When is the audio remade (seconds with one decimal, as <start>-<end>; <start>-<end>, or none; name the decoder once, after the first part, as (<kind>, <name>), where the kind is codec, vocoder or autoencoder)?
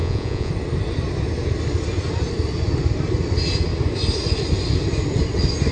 0.0-0.5 (vocoder, Vocos)